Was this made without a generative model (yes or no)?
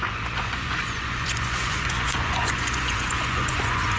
no